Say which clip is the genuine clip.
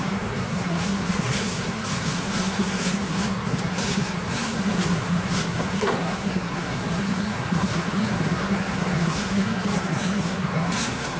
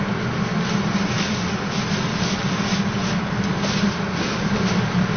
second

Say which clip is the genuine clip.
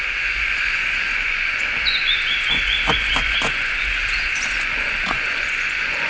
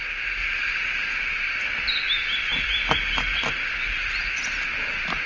second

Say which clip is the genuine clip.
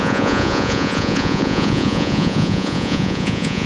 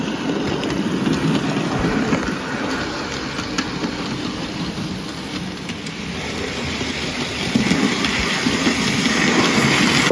second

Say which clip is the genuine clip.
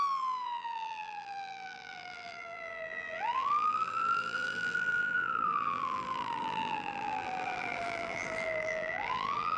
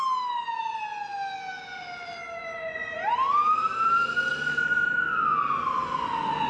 second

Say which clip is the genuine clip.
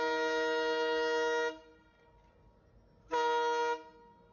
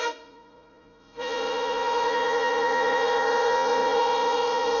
first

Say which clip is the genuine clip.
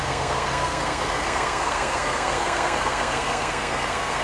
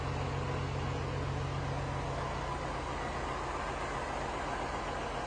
second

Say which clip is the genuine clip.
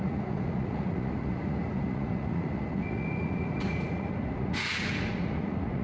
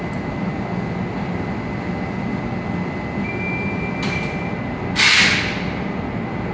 second